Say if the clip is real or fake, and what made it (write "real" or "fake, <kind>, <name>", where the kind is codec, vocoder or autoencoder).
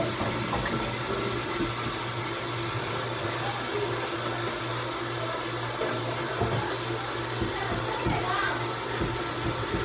real